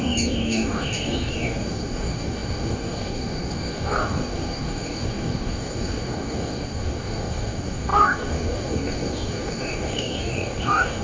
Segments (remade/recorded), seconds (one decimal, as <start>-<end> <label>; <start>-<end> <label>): 0.0-11.0 remade